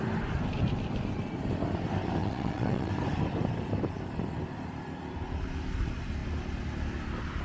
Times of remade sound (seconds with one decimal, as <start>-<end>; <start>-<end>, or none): 2.2-2.9